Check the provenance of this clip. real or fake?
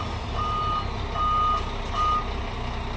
real